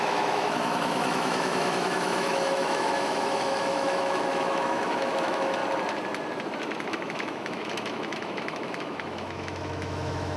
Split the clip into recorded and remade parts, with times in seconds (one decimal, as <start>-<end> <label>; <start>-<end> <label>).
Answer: 0.0-5.6 remade; 5.6-6.9 recorded; 6.9-10.4 remade